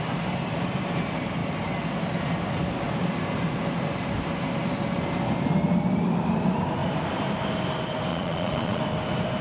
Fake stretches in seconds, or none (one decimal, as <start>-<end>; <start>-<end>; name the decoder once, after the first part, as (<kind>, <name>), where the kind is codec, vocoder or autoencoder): 8.1-8.8 (vocoder, Vocos)